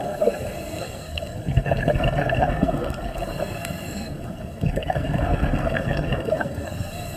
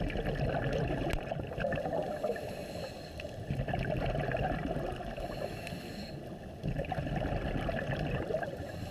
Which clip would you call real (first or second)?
second